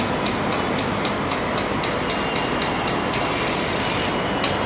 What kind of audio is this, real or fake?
real